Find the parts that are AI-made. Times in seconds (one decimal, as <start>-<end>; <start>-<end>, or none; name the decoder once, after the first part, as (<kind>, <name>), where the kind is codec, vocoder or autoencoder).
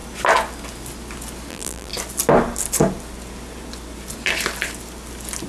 1.5-1.9 (vocoder, BigVGAN v2)